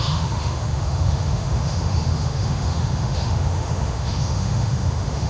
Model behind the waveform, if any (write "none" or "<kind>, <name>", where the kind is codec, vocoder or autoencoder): autoencoder, DAC-VAE